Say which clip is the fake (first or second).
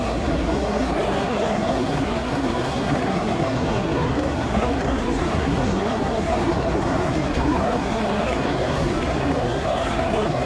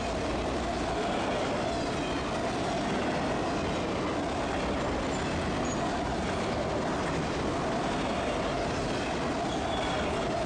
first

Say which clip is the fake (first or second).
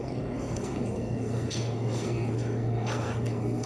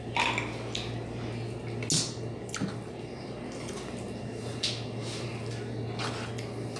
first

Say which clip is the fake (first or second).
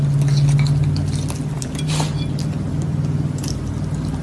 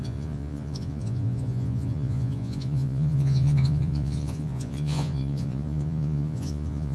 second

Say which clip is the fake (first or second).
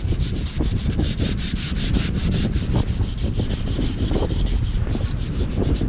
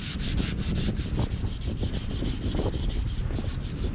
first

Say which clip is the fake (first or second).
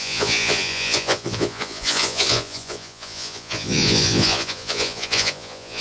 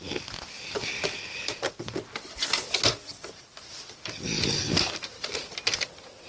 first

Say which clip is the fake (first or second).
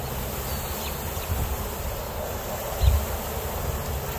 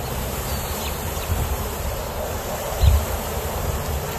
second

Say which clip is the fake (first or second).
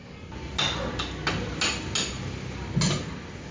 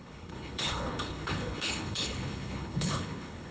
second